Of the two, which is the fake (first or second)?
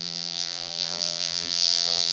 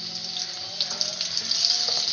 first